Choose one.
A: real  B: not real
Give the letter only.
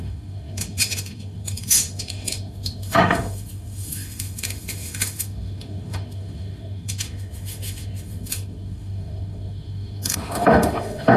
B